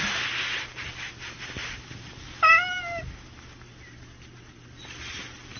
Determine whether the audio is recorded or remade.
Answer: recorded